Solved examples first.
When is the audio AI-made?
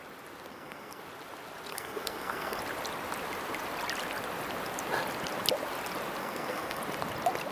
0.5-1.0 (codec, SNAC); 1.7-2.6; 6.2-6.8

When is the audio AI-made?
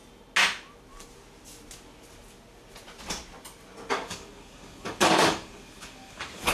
3.9-6.5 (codec, DAC)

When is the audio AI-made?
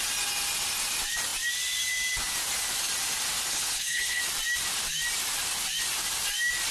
3.5-4.2 (codec, HILCodec)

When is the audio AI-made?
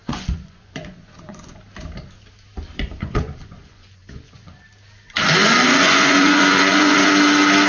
0.0-1.6 (vocoder, Vocos); 2.7-4.5; 5.4-7.1